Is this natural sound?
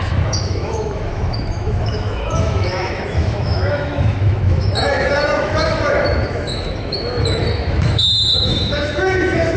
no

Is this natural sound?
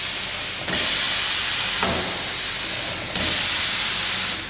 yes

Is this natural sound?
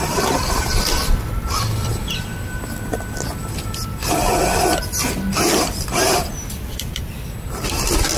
no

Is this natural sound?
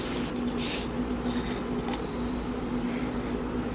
yes